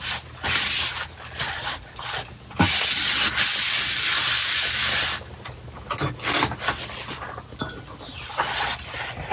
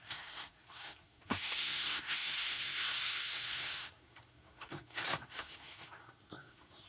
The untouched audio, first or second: first